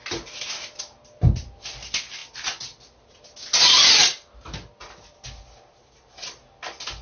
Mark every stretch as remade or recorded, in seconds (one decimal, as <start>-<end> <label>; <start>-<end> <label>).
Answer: 0.0-7.0 recorded